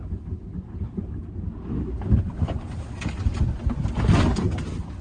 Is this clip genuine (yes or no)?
yes